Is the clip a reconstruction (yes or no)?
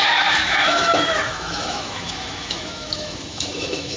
yes